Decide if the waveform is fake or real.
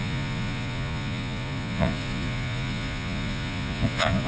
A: fake